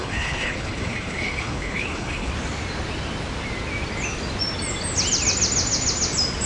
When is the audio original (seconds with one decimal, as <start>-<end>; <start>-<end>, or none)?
2.3-6.5